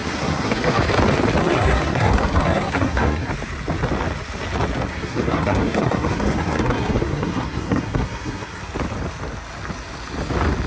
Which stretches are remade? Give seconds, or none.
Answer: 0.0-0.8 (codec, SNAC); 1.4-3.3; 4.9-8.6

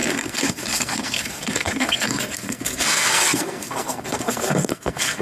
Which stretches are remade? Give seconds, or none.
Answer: 0.0-5.2 (codec, SNAC)

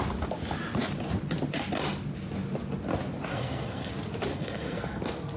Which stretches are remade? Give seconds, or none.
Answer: 3.3-3.9 (codec, SNAC); 4.3-5.0

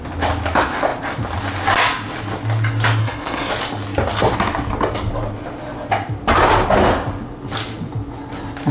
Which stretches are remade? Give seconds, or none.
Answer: 3.0-3.5 (codec, SNAC)

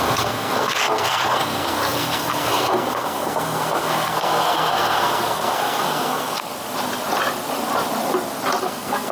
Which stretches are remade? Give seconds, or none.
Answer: 0.0-6.5 (codec, SNAC); 8.6-9.1